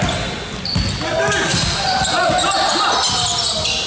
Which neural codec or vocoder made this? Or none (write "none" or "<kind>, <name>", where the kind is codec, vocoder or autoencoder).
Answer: none